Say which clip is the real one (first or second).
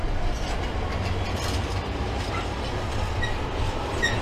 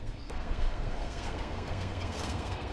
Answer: first